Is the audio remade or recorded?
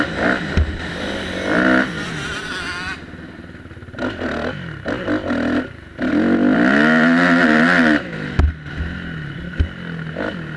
recorded